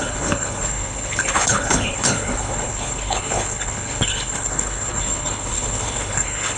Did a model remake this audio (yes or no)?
yes